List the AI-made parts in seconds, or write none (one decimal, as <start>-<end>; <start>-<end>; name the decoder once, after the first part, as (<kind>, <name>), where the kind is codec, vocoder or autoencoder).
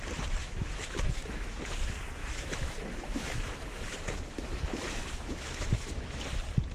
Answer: 0.4-1.6 (autoencoder, DAC-VAE); 2.2-6.2